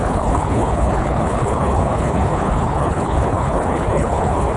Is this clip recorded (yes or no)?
no